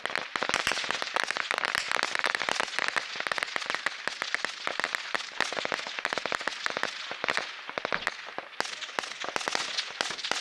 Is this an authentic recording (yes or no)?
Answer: yes